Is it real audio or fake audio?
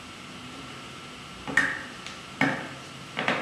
real